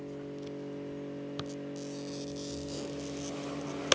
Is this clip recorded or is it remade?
recorded